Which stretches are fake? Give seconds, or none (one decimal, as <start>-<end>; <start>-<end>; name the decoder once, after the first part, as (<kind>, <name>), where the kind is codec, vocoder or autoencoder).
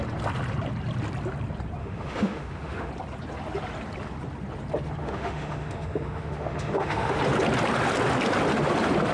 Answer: 1.8-2.9 (autoencoder, DAC-VAE); 5.0-7.2